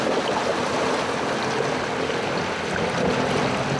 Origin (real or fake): real